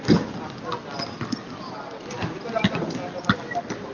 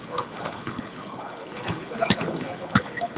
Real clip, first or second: first